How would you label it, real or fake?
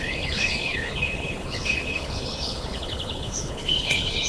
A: fake